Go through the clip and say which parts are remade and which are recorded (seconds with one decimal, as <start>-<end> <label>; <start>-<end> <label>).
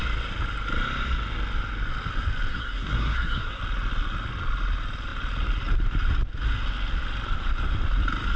0.0-2.5 recorded; 2.5-3.6 remade; 3.6-8.4 recorded